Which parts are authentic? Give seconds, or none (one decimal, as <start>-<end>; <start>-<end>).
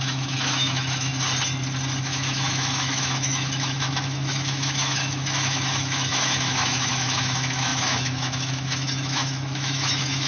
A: 1.1-2.0